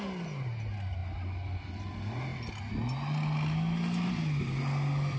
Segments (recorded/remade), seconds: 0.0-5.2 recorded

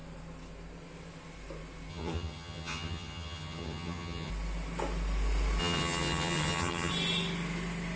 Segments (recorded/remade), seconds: 0.0-1.9 recorded; 1.9-4.3 remade; 4.3-5.6 recorded; 5.6-6.9 remade; 6.9-8.0 recorded

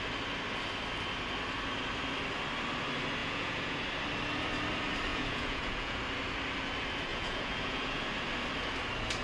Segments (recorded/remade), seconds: 0.0-3.2 recorded; 3.2-3.8 remade; 3.8-5.1 recorded; 5.1-6.0 remade; 6.0-7.1 recorded; 7.1-8.0 remade; 8.0-9.2 recorded

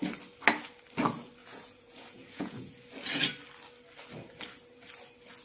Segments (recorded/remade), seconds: 0.0-1.4 recorded; 1.4-2.7 remade; 2.7-5.4 recorded